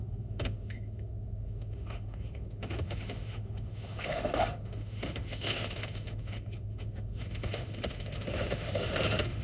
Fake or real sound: fake